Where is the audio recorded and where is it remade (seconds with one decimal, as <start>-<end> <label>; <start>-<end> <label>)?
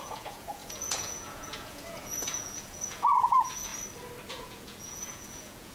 0.0-3.7 remade; 3.7-4.3 recorded; 4.3-5.7 remade